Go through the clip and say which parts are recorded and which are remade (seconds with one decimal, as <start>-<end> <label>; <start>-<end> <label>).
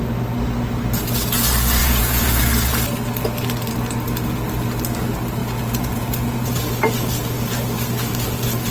0.0-1.8 recorded; 1.8-2.4 remade; 2.4-5.4 recorded; 5.4-6.5 remade; 6.5-8.7 recorded